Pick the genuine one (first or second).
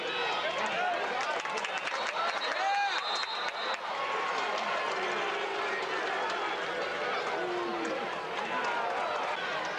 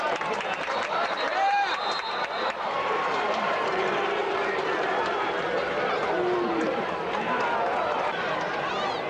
first